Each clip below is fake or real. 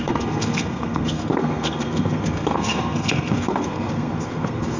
fake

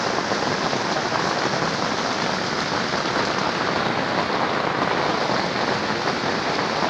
real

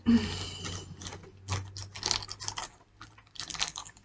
real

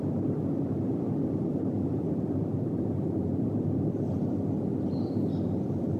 real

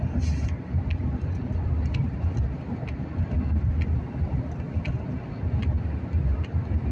real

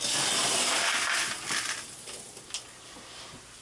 real